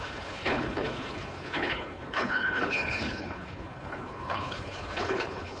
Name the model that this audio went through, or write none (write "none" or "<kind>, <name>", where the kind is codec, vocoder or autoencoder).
codec, HILCodec